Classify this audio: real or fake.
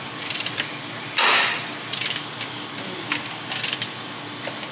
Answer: fake